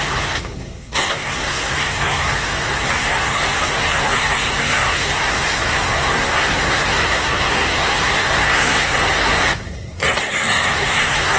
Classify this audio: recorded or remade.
remade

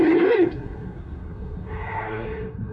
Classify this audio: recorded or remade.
remade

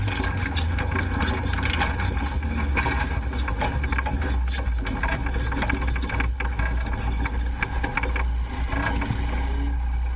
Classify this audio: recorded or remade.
recorded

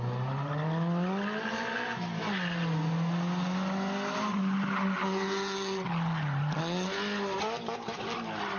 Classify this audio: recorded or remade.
recorded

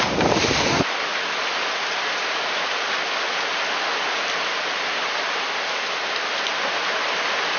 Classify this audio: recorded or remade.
recorded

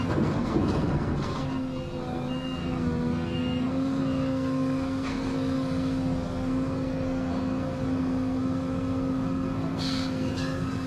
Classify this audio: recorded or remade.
remade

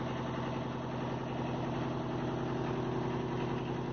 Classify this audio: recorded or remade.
recorded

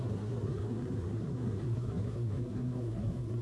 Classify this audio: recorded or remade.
remade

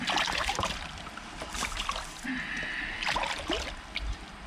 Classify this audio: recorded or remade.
recorded